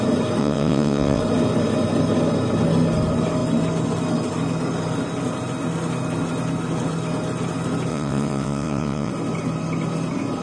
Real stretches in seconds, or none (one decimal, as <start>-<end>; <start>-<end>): 0.0-0.4; 1.2-7.9; 9.1-10.4